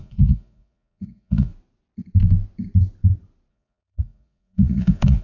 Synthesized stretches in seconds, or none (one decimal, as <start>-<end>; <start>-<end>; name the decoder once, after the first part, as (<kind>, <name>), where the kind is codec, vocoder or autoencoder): 0.0-1.5 (vocoder, Vocos); 3.5-5.2